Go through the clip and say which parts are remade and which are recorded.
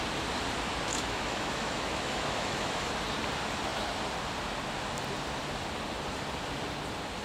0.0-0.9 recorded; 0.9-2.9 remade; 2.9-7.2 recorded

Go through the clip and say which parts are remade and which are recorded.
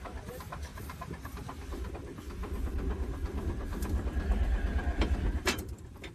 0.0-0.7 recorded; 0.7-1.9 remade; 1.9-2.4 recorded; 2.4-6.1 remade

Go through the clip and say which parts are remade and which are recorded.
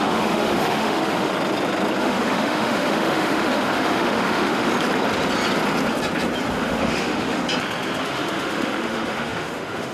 0.0-1.3 remade; 1.3-2.0 recorded; 2.0-4.7 remade; 4.7-6.5 recorded; 6.5-7.4 remade; 7.4-8.0 recorded; 8.0-9.9 remade